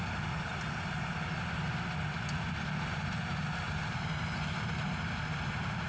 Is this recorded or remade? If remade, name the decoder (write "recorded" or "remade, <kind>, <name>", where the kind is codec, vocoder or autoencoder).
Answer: recorded